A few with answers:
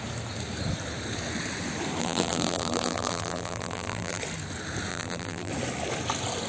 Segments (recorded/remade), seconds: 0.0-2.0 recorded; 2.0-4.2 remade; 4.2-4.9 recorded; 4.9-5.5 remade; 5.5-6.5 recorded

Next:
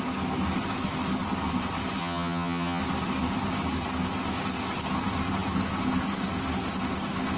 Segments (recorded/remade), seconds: 0.0-2.0 recorded; 2.0-2.8 remade; 2.8-7.4 recorded

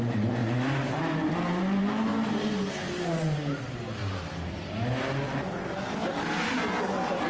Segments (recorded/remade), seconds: 0.0-4.0 remade; 4.0-6.8 recorded; 6.8-7.3 remade

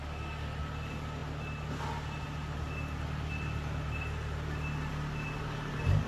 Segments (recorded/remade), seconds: 0.0-6.1 recorded

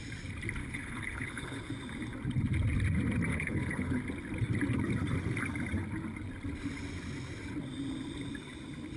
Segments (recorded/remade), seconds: 0.0-0.6 recorded; 0.6-1.7 remade; 1.7-3.3 recorded; 3.3-4.0 remade; 4.0-9.0 recorded

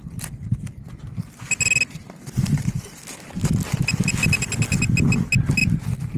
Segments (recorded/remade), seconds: 0.0-6.2 recorded

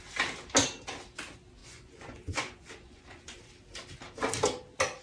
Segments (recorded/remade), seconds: 0.0-1.6 recorded; 1.6-3.4 remade; 3.4-5.0 recorded